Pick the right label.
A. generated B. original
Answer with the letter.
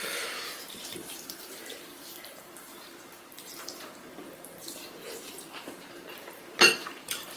A